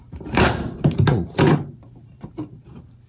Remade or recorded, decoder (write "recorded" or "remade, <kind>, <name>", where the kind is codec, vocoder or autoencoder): remade, vocoder, BigVGAN v2